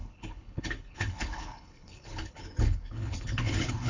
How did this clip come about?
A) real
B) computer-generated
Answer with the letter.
B